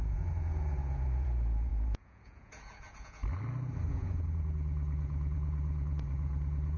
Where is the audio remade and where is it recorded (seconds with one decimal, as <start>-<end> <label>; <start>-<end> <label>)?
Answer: 0.0-3.2 remade; 3.2-3.9 recorded; 3.9-6.8 remade